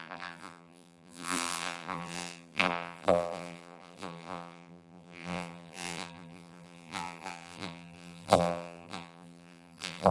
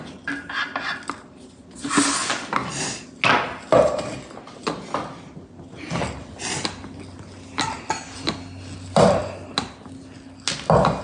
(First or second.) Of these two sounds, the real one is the second